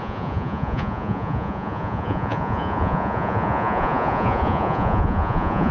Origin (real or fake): fake